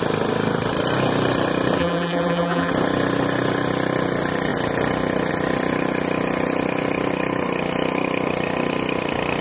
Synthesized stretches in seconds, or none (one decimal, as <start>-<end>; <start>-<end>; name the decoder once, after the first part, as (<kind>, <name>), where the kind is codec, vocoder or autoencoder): 1.8-2.7 (vocoder, BigVGAN v2)